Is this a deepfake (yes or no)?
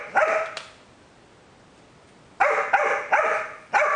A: no